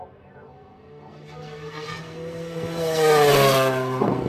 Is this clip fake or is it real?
fake